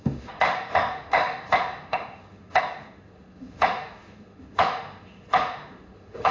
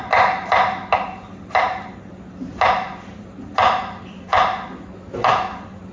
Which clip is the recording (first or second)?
second